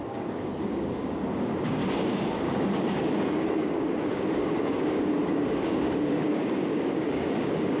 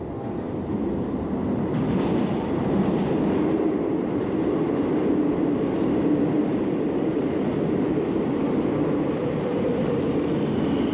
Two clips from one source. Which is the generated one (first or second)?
first